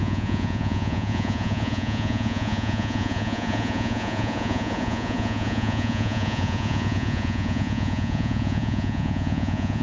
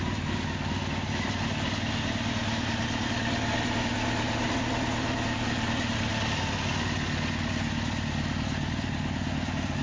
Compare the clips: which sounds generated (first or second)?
first